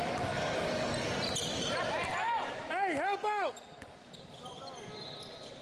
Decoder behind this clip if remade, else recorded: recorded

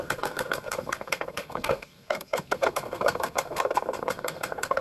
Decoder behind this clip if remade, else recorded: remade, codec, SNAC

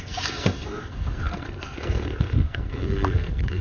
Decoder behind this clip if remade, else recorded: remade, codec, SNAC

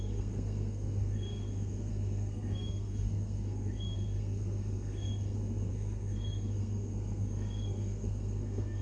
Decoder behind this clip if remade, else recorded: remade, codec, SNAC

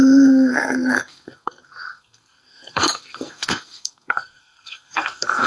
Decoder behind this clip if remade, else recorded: remade, codec, SNAC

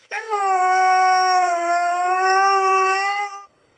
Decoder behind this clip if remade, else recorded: remade, codec, SNAC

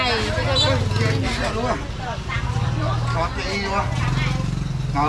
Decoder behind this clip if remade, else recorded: recorded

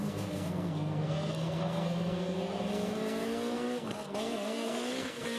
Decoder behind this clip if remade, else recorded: remade, codec, SNAC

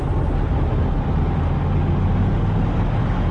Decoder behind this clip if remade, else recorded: recorded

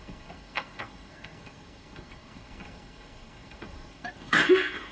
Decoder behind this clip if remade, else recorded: remade, codec, SNAC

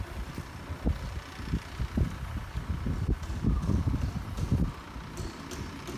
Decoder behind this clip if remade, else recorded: recorded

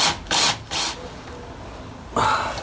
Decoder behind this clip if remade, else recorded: recorded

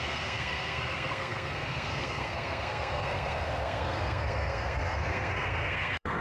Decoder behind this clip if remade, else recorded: remade, codec, SNAC